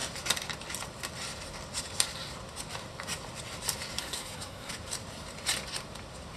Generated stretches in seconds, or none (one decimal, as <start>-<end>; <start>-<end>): 4.0-4.7